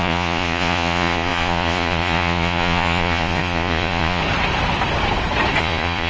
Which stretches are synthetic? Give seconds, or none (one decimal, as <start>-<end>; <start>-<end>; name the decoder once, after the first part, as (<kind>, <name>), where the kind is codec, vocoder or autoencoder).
0.0-4.2 (vocoder, Vocos); 5.6-6.1